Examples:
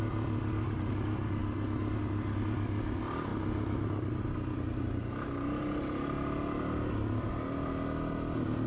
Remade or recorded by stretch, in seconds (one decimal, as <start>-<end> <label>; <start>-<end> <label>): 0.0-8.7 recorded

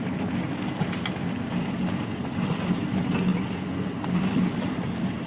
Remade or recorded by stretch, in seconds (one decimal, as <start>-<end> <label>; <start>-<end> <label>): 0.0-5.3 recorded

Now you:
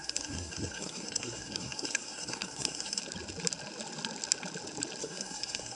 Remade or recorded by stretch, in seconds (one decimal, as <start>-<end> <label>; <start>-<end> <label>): 0.0-3.0 remade; 3.0-5.0 recorded; 5.0-5.8 remade

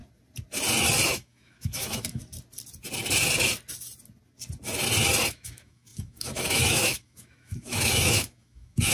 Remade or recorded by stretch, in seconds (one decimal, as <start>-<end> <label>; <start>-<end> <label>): 0.0-1.1 recorded; 1.1-2.2 remade; 2.2-5.3 recorded; 5.3-8.9 remade